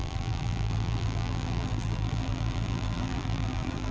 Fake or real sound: fake